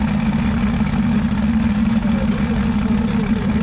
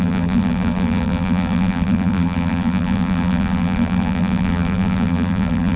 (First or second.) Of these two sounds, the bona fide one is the first